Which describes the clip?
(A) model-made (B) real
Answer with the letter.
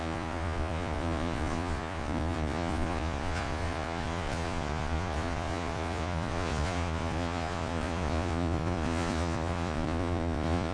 A